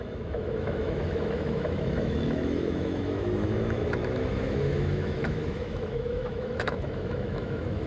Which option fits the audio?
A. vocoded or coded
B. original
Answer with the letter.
A